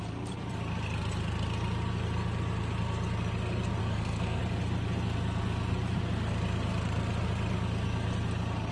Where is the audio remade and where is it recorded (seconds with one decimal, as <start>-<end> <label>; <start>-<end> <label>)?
0.0-3.8 recorded; 3.8-4.4 remade; 4.4-8.7 recorded